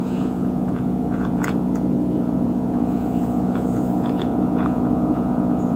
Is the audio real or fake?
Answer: fake